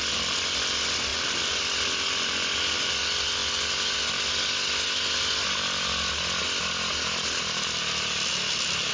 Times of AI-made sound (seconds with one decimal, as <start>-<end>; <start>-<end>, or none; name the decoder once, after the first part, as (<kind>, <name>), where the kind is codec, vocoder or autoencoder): none